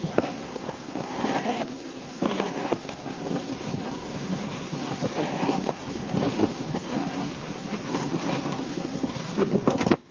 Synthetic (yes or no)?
yes